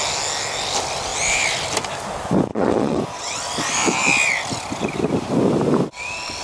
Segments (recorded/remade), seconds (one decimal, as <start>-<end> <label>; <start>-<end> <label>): 0.0-2.5 recorded; 2.5-3.0 remade; 3.0-6.4 recorded